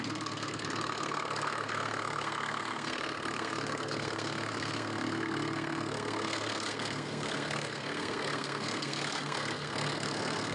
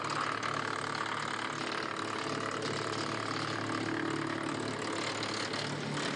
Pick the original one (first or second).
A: second